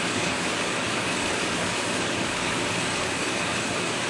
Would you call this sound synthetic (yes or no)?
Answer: yes